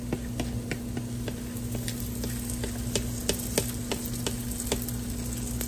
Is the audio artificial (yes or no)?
no